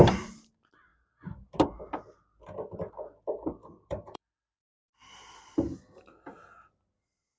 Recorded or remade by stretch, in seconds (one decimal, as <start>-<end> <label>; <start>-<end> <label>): 0.0-3.6 recorded; 3.6-5.4 remade; 5.4-7.4 recorded